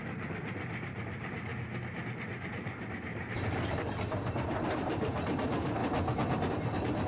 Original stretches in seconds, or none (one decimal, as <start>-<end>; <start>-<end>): 1.5-2.1; 5.8-6.5